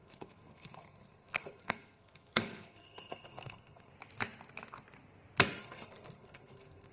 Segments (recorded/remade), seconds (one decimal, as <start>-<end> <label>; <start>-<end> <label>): 0.0-3.9 remade; 3.9-5.6 recorded; 5.6-6.9 remade